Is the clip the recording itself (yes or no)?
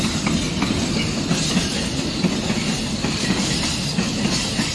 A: yes